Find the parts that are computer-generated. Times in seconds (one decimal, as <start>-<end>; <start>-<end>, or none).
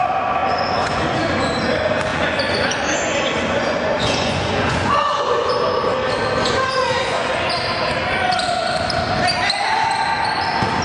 0.4-1.5; 2.1-5.5; 6.4-7.5